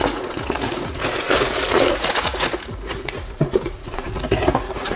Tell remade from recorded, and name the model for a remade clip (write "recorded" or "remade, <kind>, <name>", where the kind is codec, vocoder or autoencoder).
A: remade, vocoder, Vocos